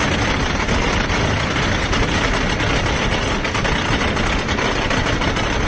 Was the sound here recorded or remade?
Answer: recorded